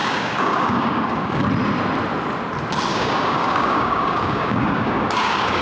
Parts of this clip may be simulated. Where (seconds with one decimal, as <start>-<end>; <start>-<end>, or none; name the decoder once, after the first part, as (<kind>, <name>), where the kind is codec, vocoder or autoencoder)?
0.0-1.4 (codec, DAC); 2.9-5.6